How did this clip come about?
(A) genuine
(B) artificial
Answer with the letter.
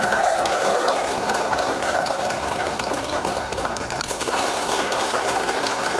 B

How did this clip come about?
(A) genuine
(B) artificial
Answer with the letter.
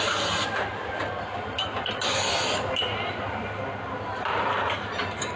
A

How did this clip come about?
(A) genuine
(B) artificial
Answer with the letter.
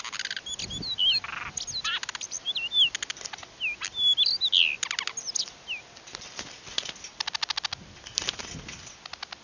A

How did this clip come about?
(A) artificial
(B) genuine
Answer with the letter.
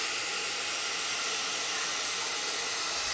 B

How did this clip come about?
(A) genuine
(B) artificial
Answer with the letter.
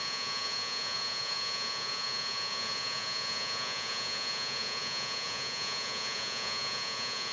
B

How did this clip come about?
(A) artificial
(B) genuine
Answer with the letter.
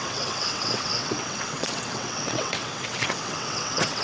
A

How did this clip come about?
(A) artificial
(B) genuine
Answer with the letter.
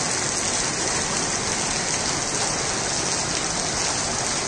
B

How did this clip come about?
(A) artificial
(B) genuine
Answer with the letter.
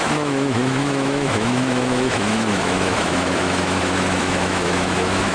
A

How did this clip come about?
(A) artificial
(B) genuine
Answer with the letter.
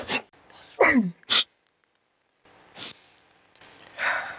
B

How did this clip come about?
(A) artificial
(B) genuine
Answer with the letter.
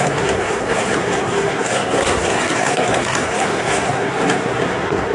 A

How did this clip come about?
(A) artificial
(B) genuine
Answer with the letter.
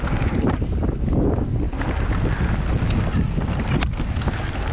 B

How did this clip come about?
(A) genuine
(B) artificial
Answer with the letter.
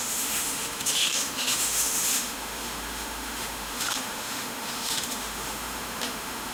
B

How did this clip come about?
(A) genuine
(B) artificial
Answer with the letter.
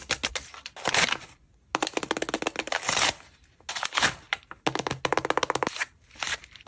A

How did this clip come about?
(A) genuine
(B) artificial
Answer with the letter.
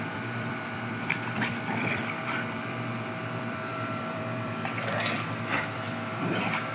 B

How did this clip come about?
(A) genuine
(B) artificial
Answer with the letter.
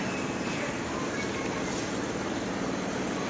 A